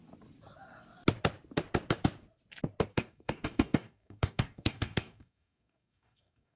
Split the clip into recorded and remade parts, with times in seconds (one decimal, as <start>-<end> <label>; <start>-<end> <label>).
0.0-2.9 recorded; 2.9-6.6 remade